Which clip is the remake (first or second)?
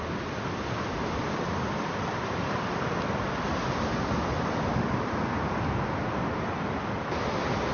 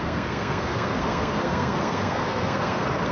second